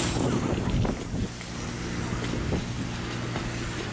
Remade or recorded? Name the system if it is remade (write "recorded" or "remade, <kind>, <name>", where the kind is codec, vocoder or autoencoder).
recorded